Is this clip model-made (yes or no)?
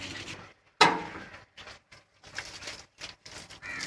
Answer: no